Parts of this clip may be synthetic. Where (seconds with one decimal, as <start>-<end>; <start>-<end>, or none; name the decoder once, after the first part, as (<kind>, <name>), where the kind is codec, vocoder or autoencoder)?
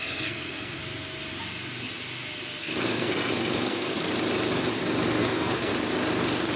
0.0-0.8 (codec, SNAC); 2.6-4.1; 5.2-5.7